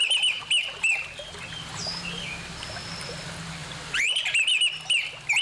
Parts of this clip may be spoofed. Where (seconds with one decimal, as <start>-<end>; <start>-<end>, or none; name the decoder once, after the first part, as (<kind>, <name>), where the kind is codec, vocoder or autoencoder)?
3.6-4.3 (vocoder, BigVGAN v2)